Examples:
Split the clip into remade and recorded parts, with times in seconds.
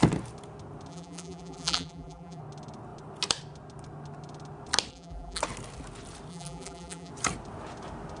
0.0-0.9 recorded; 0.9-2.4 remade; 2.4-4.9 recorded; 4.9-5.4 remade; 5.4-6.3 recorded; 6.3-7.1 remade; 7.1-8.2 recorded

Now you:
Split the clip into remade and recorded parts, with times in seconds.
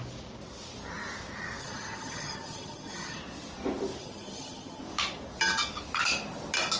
0.0-1.6 recorded; 1.6-3.2 remade; 3.2-4.0 recorded; 4.0-4.8 remade; 4.8-6.8 recorded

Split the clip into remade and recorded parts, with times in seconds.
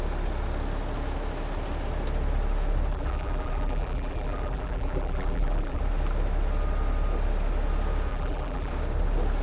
0.0-2.9 recorded; 2.9-5.8 remade; 5.8-8.1 recorded; 8.1-8.7 remade; 8.7-9.4 recorded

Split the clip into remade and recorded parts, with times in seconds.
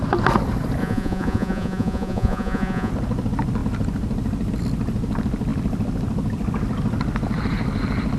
0.0-0.8 recorded; 0.8-2.9 remade; 2.9-8.2 recorded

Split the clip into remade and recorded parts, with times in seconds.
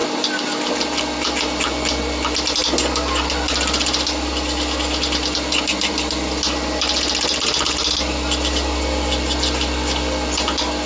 0.0-10.9 recorded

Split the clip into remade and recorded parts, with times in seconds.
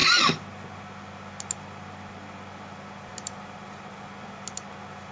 0.0-5.1 recorded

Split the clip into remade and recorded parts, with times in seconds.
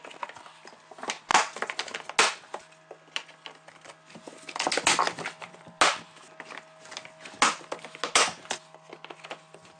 0.0-9.8 recorded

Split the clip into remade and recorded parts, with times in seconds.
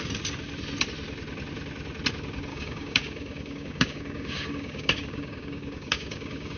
0.0-2.5 recorded; 2.5-6.6 remade